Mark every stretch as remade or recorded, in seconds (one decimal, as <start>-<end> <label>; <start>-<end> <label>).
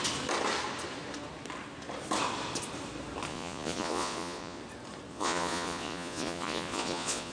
0.0-3.3 recorded; 3.3-4.6 remade; 4.6-5.1 recorded; 5.1-7.3 remade